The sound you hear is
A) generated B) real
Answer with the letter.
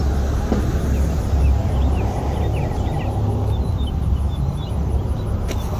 B